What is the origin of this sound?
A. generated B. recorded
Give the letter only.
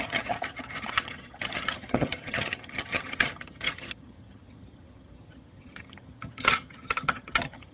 A